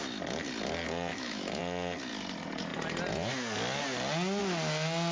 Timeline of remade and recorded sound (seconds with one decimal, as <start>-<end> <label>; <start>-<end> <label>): 0.0-1.1 recorded; 1.1-1.6 remade; 1.6-5.1 recorded